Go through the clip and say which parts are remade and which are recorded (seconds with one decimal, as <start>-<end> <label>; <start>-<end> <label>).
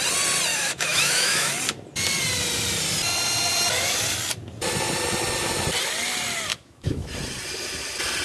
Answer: 0.0-0.5 recorded; 0.5-1.5 remade; 1.5-6.5 recorded; 6.5-7.1 remade; 7.1-8.2 recorded